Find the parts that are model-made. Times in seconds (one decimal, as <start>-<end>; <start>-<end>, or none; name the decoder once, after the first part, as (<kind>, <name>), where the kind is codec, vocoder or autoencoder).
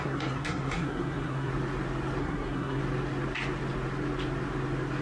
0.0-1.5 (codec, SNAC); 2.2-2.8